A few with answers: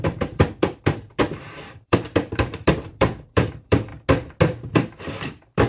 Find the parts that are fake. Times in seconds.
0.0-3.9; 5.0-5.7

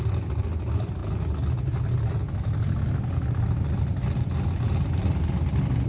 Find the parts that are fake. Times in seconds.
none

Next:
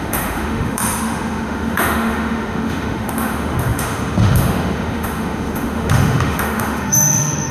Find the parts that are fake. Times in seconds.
0.0-7.5